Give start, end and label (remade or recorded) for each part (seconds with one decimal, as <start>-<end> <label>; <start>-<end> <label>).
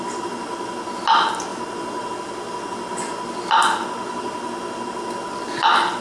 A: 0.0-6.0 recorded